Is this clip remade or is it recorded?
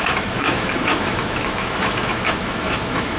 remade